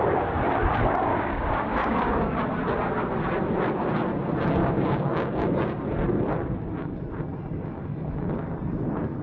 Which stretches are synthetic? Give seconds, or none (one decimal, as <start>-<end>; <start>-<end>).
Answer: 1.1-2.4; 4.6-5.8